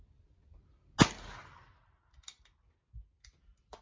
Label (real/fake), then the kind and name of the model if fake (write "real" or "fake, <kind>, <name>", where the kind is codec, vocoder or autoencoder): real